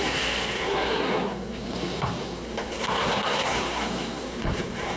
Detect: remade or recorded remade